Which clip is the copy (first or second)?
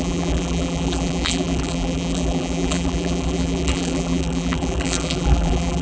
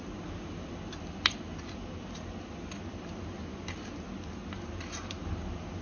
first